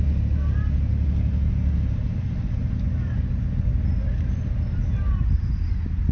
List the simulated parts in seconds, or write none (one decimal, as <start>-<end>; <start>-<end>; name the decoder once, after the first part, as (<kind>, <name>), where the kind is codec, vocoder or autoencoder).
none